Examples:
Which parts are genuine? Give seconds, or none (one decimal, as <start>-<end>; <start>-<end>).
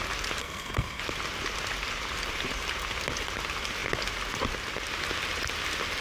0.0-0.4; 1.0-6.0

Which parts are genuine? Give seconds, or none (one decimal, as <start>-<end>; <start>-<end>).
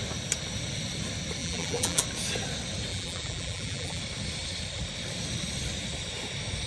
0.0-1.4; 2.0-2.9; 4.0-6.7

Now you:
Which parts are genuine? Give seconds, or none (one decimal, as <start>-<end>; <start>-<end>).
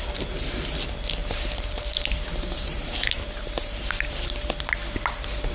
0.0-1.2; 4.2-5.5